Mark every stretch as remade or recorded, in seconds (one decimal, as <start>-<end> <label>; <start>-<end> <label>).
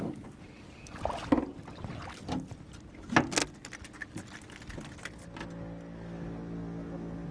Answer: 0.0-7.3 recorded